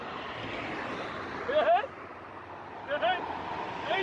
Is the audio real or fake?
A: real